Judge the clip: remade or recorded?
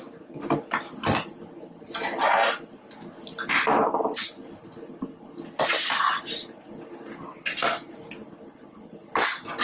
recorded